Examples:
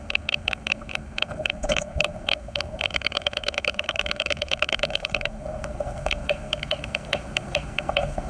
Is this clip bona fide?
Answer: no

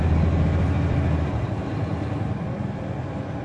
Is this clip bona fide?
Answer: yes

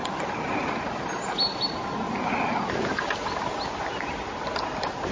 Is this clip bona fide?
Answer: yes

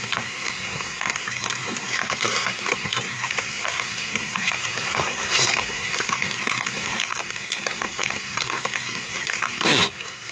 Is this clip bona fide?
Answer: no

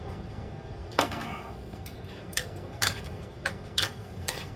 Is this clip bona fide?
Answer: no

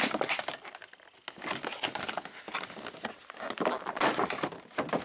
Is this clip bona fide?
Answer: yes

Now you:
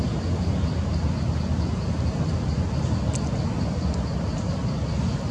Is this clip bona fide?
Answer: yes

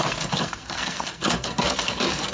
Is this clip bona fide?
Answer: no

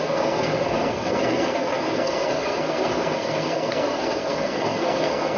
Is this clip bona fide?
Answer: no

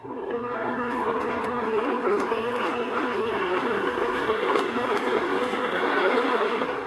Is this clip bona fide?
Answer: no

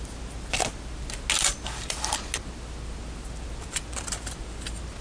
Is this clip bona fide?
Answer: yes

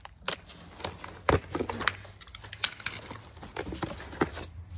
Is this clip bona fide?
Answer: yes